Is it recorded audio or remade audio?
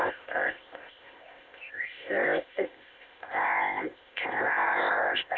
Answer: remade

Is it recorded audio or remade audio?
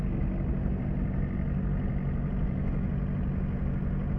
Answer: recorded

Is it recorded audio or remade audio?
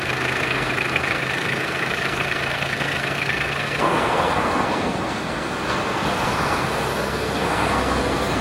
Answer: remade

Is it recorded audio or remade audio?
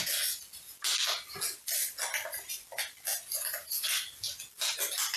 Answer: recorded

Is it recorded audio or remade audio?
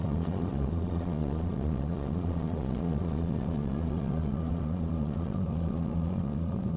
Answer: remade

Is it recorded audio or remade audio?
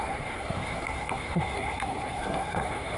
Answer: remade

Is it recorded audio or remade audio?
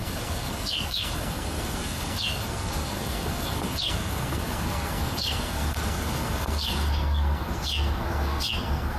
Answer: remade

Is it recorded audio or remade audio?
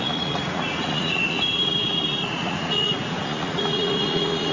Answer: remade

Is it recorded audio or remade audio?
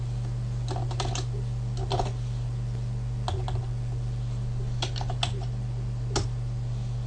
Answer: recorded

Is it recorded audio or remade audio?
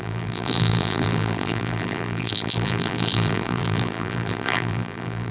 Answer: remade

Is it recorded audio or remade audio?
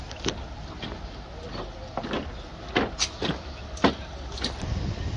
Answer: recorded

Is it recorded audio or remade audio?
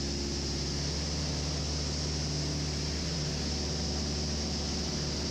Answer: recorded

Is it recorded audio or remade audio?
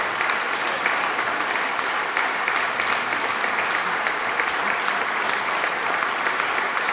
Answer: recorded